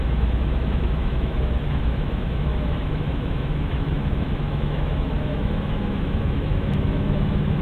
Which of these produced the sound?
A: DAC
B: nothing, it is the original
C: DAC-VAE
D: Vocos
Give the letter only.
C